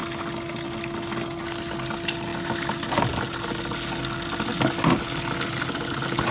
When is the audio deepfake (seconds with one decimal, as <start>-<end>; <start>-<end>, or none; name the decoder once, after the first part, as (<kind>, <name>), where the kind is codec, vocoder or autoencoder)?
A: none